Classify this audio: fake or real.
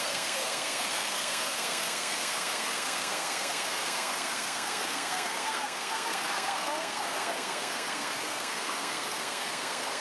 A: fake